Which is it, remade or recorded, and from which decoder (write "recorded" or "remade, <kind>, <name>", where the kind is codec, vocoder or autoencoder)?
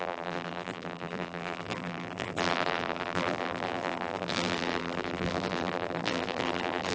remade, vocoder, BigVGAN v2